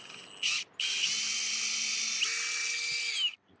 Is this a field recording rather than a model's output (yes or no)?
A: yes